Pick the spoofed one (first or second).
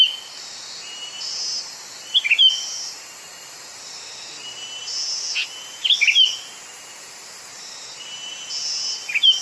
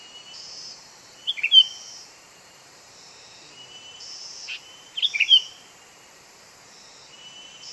second